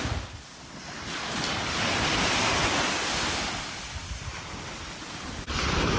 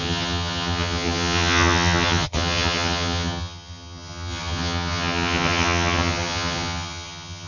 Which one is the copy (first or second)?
second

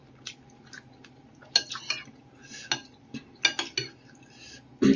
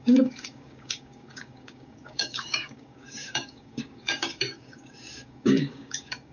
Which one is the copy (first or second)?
second